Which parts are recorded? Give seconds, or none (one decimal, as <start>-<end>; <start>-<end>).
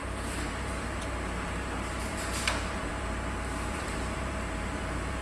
none